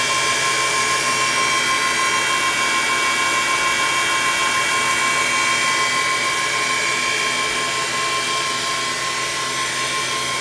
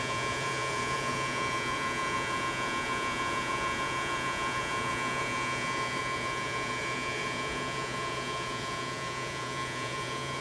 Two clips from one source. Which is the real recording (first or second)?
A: first